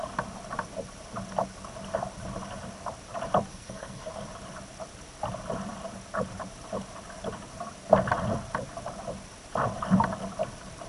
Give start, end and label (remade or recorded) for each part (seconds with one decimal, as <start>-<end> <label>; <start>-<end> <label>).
0.0-3.5 recorded; 3.5-4.1 remade; 4.1-10.9 recorded